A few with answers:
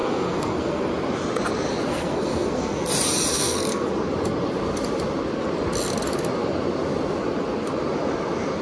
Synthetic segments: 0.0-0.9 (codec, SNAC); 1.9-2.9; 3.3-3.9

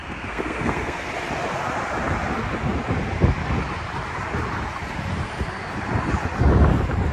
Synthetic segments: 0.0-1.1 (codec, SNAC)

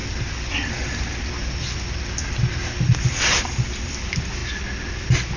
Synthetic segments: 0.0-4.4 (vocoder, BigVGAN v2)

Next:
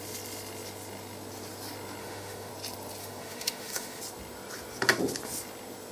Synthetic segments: 2.0-2.5 (autoencoder, DAC-VAE); 3.0-4.0

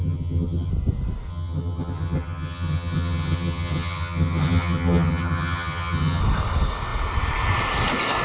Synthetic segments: 0.0-0.7 (vocoder, HiFi-GAN); 1.3-6.2

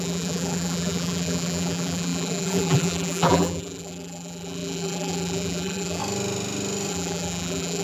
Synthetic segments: 0.0-6.0 (vocoder, BigVGAN v2); 6.9-7.8

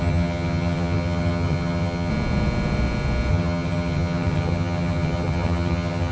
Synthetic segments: 0.0-2.1 (vocoder, HiFi-GAN); 3.3-6.1